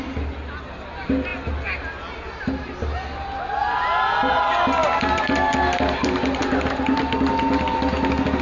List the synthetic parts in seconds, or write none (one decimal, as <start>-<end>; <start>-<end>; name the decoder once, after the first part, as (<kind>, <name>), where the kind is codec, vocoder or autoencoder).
none

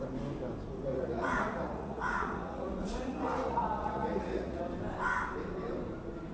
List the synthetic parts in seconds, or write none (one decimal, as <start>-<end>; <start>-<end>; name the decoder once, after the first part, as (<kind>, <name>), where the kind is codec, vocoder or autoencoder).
0.9-4.7 (vocoder, Vocos)

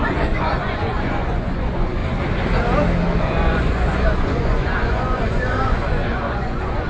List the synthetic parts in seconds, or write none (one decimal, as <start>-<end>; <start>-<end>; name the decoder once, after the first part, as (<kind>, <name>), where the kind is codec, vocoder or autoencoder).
0.0-2.0 (vocoder, Vocos); 3.2-6.9